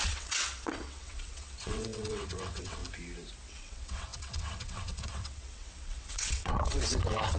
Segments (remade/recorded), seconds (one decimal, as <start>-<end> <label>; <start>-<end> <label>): 0.0-2.8 remade; 2.8-3.5 recorded; 3.5-7.4 remade